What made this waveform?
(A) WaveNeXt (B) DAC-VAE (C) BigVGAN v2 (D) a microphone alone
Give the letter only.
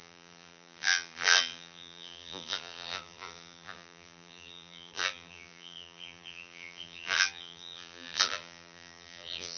C